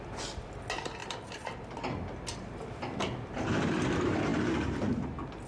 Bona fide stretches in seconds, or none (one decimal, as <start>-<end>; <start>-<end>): 0.0-5.5